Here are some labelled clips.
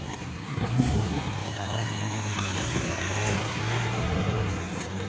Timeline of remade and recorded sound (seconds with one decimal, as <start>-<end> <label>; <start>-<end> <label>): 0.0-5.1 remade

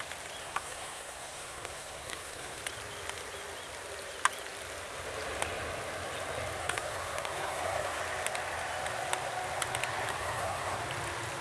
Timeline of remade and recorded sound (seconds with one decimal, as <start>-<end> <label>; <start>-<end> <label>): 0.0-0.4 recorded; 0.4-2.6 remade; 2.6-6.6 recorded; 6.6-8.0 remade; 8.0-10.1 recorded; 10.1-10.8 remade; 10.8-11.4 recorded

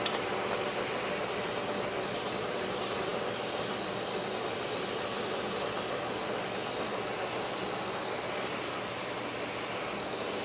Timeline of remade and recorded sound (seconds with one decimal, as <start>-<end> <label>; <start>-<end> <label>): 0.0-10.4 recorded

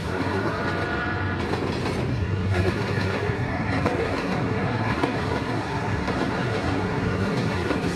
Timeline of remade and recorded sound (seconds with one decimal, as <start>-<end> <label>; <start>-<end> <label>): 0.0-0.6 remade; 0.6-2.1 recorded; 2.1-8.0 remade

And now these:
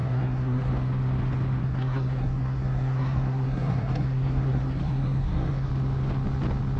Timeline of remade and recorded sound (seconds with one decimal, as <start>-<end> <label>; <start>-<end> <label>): 0.0-0.7 remade; 0.7-1.6 recorded; 1.6-5.7 remade; 5.7-6.8 recorded